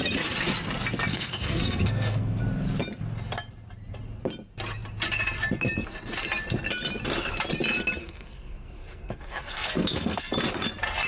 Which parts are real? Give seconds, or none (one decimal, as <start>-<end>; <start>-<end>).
0.0-1.1; 2.4-8.0; 10.3-11.1